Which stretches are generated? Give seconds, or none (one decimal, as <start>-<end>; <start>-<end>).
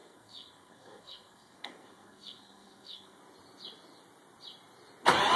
0.0-3.2